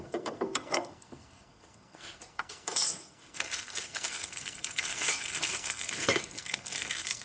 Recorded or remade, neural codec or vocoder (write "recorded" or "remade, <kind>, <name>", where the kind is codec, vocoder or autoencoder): remade, codec, SNAC